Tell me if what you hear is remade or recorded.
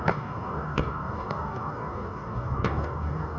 remade